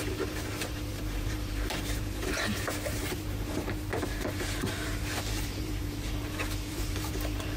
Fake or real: fake